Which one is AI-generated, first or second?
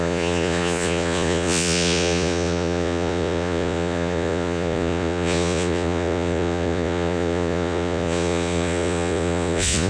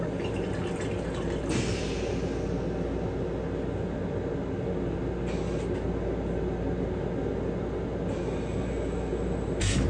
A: first